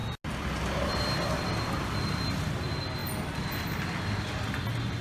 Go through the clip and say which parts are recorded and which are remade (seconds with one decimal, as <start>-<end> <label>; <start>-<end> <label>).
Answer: 0.0-5.0 recorded

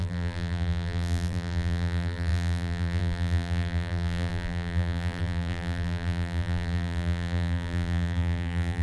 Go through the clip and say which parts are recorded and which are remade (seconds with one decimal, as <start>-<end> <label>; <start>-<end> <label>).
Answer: 0.0-8.8 remade

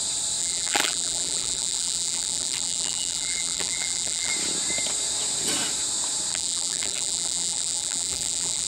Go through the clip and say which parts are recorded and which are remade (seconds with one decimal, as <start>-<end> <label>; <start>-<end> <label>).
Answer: 0.0-0.4 recorded; 0.4-4.3 remade; 4.3-6.3 recorded; 6.3-8.7 remade

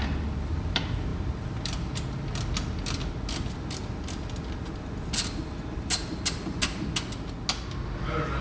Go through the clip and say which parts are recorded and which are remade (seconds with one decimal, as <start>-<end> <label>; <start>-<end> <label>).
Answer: 0.0-8.4 recorded

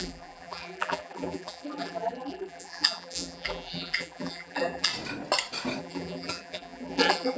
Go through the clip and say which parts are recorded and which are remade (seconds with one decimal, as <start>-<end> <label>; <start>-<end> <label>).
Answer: 0.0-4.9 remade; 4.9-5.8 recorded; 5.8-7.4 remade